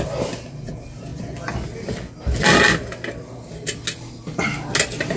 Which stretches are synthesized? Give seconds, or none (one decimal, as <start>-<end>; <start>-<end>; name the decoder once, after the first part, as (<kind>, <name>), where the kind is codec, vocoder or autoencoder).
none

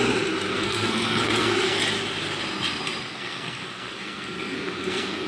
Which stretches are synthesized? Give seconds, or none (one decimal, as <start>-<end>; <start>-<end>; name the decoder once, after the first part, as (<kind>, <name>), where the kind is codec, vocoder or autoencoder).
0.5-1.8 (codec, SNAC); 3.1-5.3

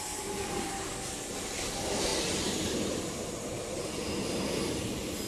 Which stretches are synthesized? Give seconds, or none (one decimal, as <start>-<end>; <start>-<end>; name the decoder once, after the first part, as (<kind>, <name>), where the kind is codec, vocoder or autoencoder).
none

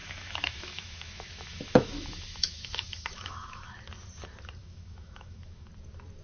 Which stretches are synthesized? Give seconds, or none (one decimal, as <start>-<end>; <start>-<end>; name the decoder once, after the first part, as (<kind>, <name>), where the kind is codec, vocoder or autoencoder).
0.0-3.7 (autoencoder, DAC-VAE); 4.6-5.7

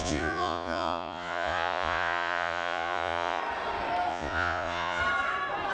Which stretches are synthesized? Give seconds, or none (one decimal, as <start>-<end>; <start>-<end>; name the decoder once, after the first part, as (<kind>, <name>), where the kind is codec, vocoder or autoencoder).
0.0-3.4 (vocoder, Vocos); 4.1-5.0

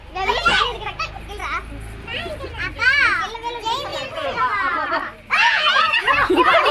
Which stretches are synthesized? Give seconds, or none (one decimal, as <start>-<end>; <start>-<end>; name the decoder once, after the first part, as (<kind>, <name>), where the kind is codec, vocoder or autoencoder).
5.4-6.7 (vocoder, Vocos)

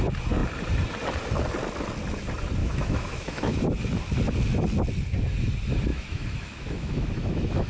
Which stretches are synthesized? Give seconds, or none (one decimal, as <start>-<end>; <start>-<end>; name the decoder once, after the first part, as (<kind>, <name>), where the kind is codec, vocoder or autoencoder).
2.6-3.6 (autoencoder, DAC-VAE); 5.9-7.7